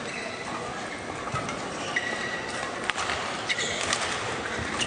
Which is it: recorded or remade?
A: recorded